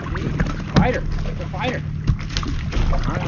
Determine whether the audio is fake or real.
real